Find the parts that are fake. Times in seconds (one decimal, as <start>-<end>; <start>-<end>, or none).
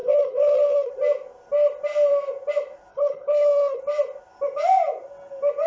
0.0-0.9; 2.9-3.8